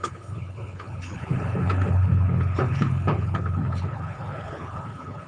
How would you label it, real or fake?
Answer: fake